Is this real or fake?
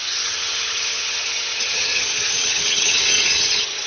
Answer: fake